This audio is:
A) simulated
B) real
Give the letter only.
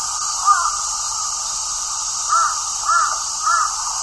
B